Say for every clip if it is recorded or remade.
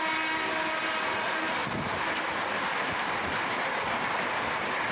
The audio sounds recorded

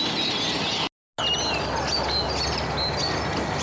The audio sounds recorded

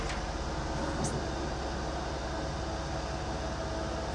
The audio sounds recorded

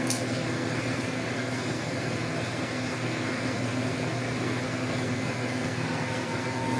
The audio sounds remade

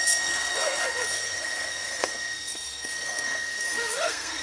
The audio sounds remade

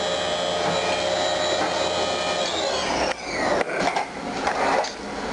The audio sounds recorded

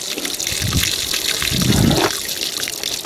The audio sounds recorded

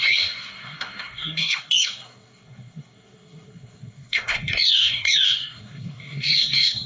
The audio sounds remade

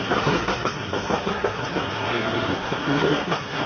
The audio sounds remade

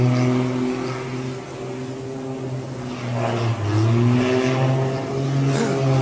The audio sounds recorded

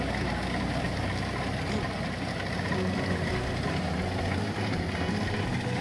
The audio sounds recorded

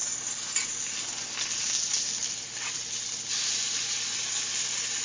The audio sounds recorded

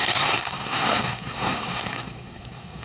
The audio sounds remade